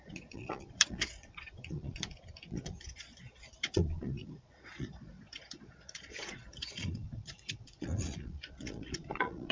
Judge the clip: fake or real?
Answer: fake